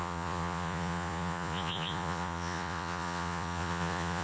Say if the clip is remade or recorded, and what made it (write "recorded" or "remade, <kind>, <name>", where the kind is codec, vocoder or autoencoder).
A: remade, vocoder, Vocos